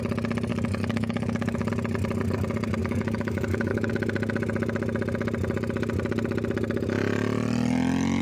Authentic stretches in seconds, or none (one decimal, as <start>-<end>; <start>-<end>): 0.0-0.5; 1.7-2.8; 3.9-8.2

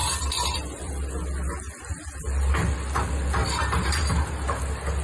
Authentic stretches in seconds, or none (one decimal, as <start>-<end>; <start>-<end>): 0.9-3.4; 4.1-5.0

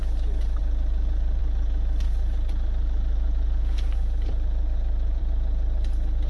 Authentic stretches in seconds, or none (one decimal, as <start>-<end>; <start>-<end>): 0.0-0.6

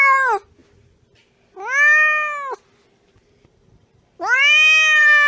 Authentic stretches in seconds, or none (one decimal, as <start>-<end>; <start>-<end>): 0.0-5.3